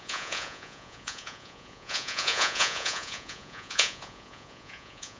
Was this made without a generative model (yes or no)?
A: no